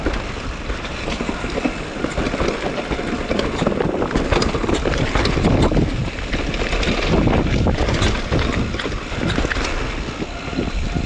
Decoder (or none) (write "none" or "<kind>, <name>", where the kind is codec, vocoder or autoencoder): none